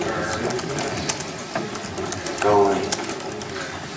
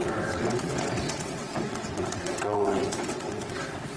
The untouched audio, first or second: first